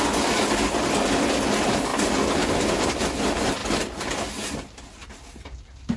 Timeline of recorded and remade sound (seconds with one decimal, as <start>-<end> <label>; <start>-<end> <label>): 0.0-6.0 recorded